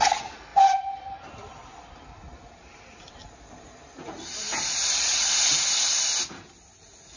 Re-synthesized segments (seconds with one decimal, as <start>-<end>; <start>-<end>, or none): 0.5-3.1; 4.0-5.3